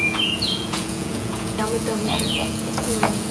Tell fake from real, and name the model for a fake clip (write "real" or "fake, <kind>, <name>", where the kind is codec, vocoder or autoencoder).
fake, vocoder, Vocos